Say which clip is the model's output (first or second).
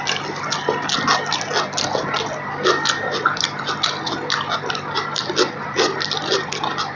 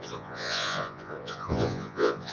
second